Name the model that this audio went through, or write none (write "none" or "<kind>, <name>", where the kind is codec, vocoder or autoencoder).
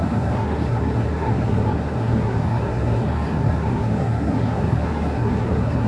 codec, SNAC